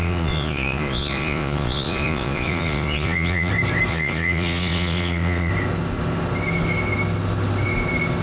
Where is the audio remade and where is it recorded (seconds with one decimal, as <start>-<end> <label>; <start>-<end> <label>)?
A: 0.0-3.5 remade; 3.5-3.9 recorded; 3.9-5.5 remade; 5.5-8.2 recorded